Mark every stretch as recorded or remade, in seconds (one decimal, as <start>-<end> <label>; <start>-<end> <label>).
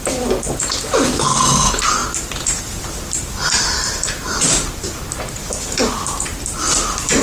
0.0-2.0 recorded; 2.0-5.2 remade; 5.2-7.2 recorded